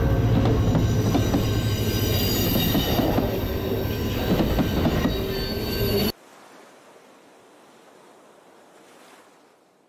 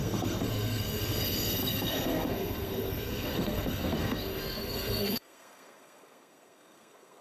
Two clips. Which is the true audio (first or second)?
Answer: first